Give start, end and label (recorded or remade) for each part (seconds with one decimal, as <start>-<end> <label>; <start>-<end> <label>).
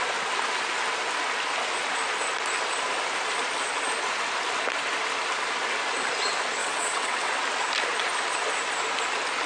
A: 0.0-6.6 recorded; 6.6-7.3 remade; 7.3-9.5 recorded